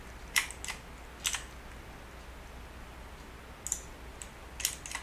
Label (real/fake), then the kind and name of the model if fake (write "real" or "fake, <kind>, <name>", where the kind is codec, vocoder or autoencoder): real